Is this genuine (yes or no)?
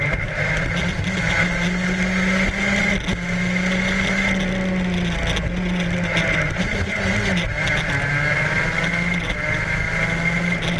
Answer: yes